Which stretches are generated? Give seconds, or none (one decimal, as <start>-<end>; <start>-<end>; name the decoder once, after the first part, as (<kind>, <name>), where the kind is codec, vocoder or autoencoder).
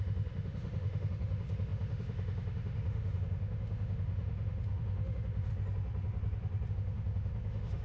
0.0-5.5 (autoencoder, DAC-VAE); 6.7-7.8